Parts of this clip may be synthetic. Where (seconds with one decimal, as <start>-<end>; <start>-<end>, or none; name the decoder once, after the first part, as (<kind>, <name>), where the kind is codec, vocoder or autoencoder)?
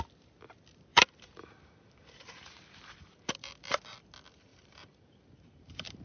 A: 0.9-3.3 (vocoder, BigVGAN v2); 4.5-6.0